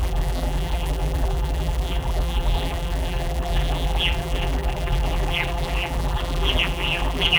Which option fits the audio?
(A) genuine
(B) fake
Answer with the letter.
B